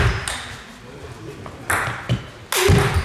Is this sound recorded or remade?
recorded